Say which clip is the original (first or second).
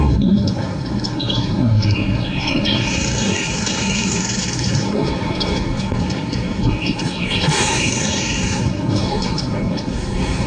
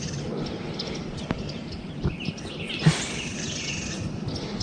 second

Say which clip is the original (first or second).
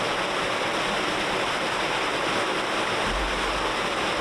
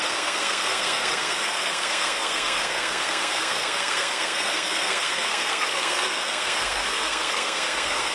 first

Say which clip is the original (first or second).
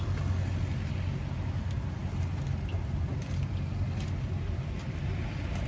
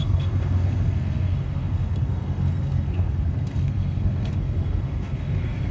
first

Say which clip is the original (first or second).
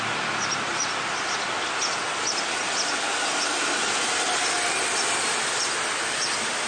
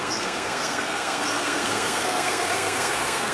first